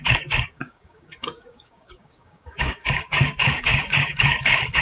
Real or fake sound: fake